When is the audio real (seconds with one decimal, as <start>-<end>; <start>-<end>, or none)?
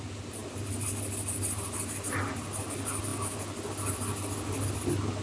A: 0.0-5.2